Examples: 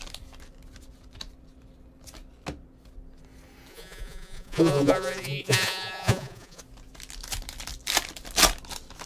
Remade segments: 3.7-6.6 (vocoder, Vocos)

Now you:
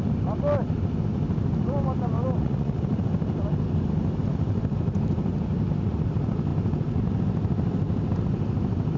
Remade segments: 2.4-3.0 (vocoder, Vocos)

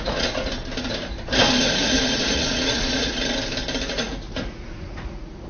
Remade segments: 0.0-0.5 (vocoder, Vocos); 1.6-3.2; 3.9-5.5

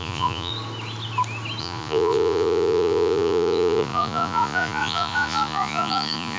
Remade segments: 0.0-0.5 (vocoder, Vocos); 1.6-6.4